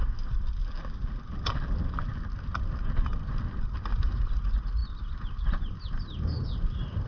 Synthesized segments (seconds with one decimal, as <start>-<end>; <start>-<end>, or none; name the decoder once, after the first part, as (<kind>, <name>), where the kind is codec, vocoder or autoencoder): 0.6-2.2 (vocoder, BigVGAN v2)